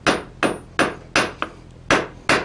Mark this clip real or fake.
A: real